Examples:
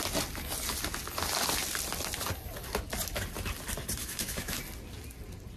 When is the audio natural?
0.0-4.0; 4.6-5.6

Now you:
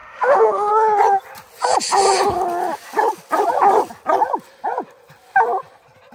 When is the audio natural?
0.7-6.1